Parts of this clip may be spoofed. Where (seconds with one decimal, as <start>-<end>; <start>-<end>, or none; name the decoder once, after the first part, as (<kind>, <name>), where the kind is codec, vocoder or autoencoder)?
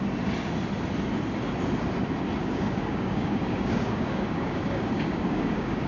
2.4-5.9 (codec, DAC)